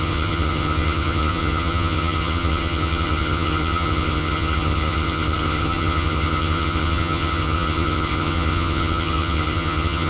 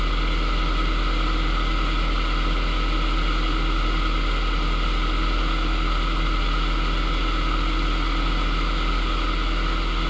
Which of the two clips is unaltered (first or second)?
second